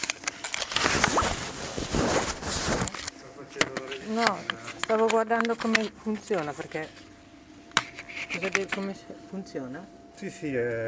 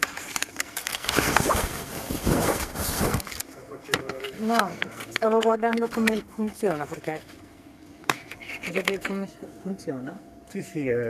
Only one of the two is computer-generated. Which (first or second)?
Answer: second